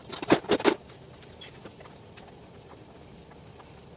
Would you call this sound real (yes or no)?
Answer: yes